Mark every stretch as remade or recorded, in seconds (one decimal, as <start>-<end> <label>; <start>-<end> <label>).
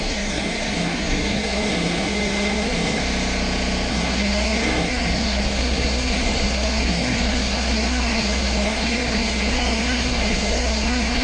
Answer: 0.0-3.0 remade; 3.0-3.9 recorded; 3.9-11.2 remade